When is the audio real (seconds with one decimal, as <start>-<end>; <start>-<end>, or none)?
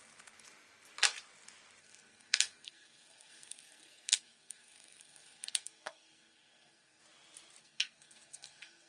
0.0-1.8; 7.0-7.6